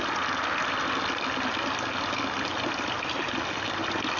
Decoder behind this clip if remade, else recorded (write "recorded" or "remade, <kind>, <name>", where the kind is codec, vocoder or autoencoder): recorded